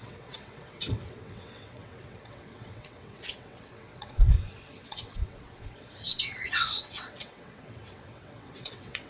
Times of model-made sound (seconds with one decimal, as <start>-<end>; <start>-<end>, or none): 0.0-9.1